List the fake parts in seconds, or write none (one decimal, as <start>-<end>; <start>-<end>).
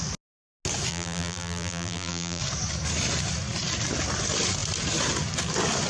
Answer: 0.9-2.4